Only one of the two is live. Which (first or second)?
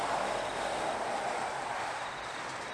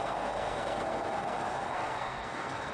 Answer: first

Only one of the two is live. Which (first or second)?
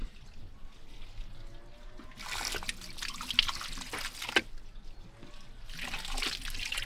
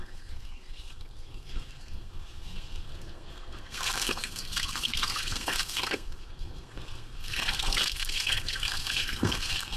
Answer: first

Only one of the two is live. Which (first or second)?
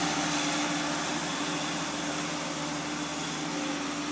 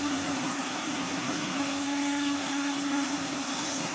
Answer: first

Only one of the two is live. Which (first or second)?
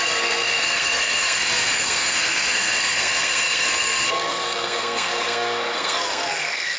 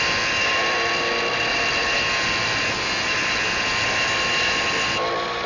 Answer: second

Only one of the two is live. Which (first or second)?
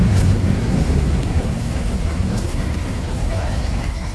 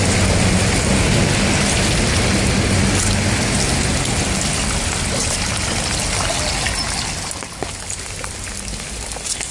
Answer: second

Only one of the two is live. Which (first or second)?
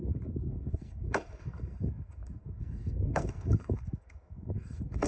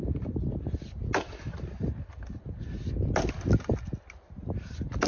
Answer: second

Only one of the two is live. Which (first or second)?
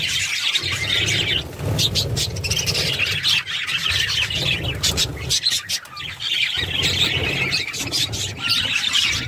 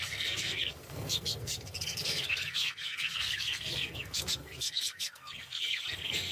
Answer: first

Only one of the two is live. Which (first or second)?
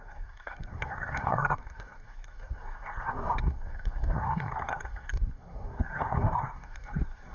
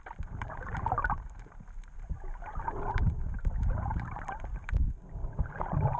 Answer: second